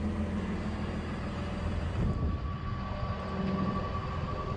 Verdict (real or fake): real